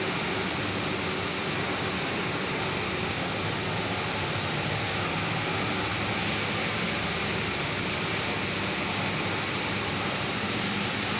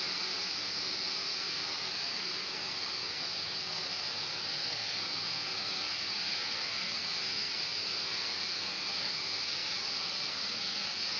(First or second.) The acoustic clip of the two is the first